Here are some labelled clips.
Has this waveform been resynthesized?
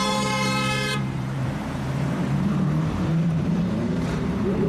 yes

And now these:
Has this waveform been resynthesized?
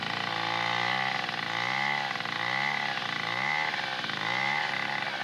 no